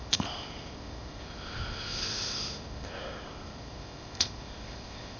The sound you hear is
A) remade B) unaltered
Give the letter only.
A